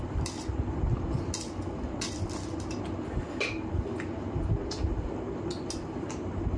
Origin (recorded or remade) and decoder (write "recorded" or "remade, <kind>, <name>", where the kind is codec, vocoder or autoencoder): recorded